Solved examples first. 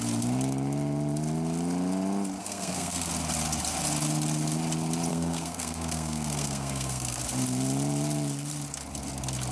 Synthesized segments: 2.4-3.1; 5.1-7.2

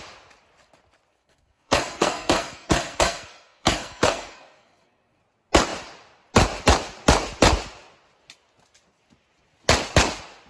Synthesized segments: 1.1-5.2

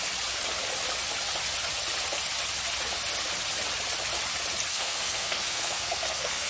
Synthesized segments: 4.7-6.5

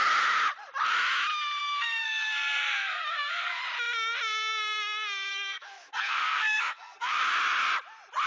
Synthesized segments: 1.6-3.6; 5.3-7.1

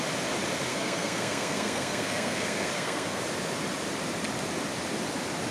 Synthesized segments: 0.7-3.2

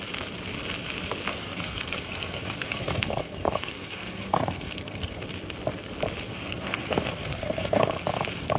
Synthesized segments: 1.3-5.2; 6.3-7.9

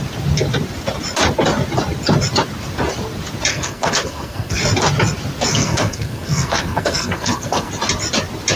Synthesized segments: 3.5-4.6; 5.5-7.7